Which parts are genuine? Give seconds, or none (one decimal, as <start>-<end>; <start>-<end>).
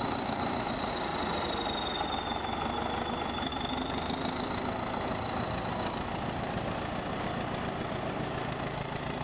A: 1.1-3.1; 3.5-7.8